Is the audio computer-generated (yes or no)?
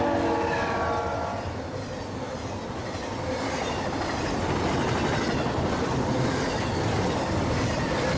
no